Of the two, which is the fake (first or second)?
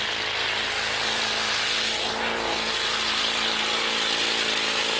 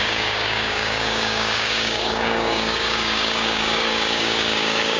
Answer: second